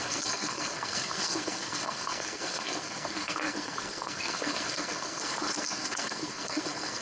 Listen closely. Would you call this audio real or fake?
fake